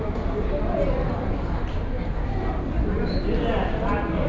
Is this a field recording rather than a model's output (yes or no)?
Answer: yes